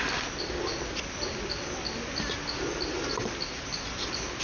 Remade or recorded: recorded